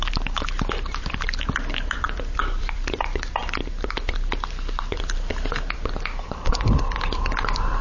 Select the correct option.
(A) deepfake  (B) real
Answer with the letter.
A